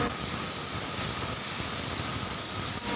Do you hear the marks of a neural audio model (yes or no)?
no